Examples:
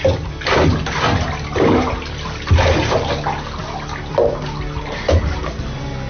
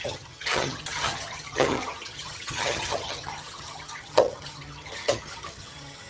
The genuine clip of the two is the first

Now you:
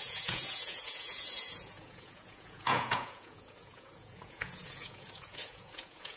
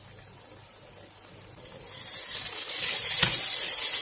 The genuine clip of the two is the second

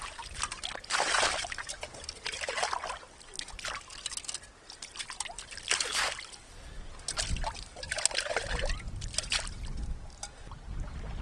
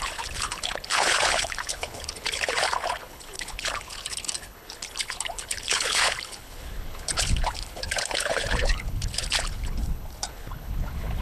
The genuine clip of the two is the first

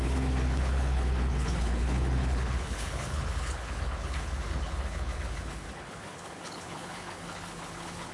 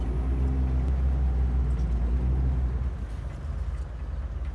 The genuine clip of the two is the second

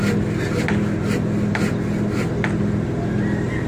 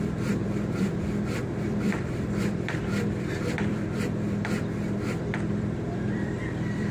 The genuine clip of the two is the first